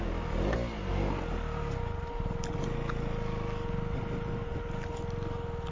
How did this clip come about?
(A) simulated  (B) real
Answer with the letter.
B